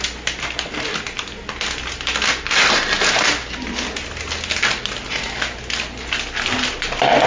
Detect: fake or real real